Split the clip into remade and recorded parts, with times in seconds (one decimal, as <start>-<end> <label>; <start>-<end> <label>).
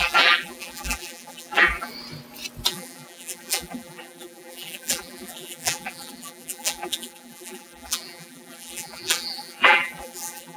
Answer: 0.0-1.9 remade; 1.9-2.7 recorded; 2.7-10.6 remade